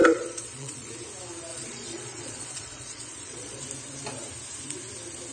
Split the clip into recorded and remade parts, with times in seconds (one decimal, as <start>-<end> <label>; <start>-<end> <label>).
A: 0.0-0.9 remade; 0.9-1.5 recorded; 1.5-3.6 remade; 3.6-5.3 recorded